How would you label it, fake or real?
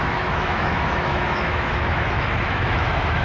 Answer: fake